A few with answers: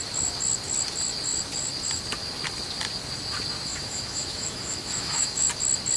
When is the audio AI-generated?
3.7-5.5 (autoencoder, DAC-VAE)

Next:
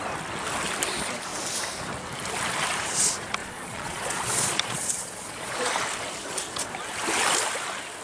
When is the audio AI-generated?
3.4-5.7 (vocoder, Vocos)